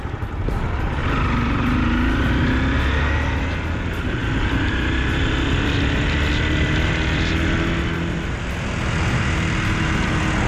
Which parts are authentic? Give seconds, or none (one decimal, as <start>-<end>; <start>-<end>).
0.0-10.5